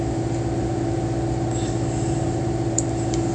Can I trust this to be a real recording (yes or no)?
no